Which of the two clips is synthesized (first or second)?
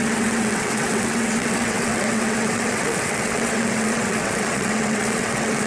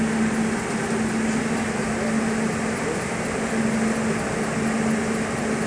first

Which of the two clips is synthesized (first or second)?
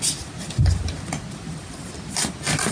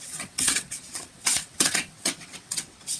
second